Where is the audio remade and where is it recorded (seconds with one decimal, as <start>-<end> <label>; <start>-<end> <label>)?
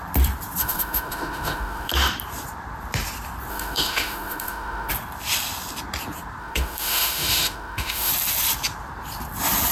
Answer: 0.0-0.6 recorded; 0.6-1.9 remade; 1.9-3.5 recorded; 3.5-4.9 remade; 4.9-6.4 recorded; 6.4-8.1 remade; 8.1-9.7 recorded